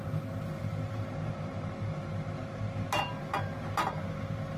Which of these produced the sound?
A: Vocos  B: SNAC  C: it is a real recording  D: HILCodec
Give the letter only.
C